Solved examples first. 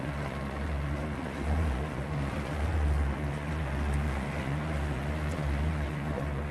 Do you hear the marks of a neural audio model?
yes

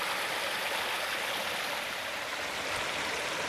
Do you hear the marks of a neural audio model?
no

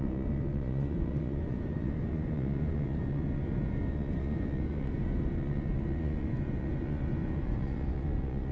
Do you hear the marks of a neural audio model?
yes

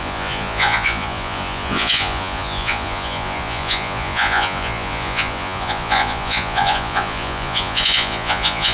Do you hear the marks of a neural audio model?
yes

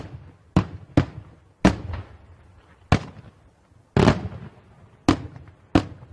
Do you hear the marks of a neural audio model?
no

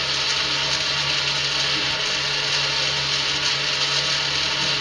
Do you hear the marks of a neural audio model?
no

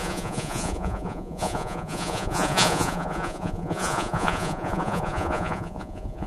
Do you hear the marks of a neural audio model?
yes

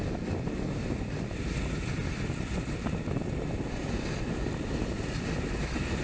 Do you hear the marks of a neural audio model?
no